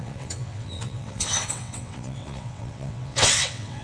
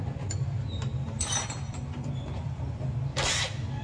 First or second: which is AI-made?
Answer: first